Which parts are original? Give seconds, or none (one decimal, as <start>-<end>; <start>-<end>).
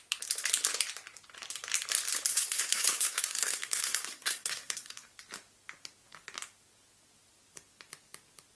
0.0-2.3; 5.1-8.6